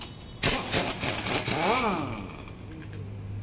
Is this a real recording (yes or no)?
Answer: yes